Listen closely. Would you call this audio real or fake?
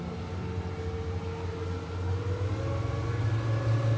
real